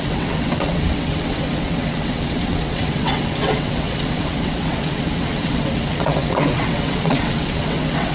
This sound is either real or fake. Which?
fake